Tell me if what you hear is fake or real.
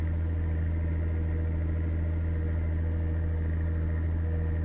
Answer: real